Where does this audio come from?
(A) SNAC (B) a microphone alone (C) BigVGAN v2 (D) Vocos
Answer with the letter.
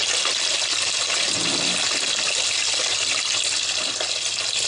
B